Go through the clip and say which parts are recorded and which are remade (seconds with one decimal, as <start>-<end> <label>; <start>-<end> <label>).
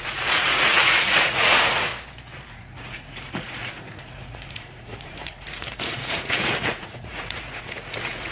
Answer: 0.0-1.9 remade; 1.9-2.5 recorded; 2.5-8.3 remade